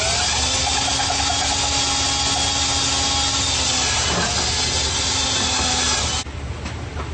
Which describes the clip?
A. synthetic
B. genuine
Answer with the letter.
B